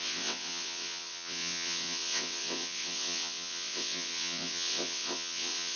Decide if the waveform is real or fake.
fake